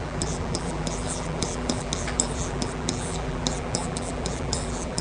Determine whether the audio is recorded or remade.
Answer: remade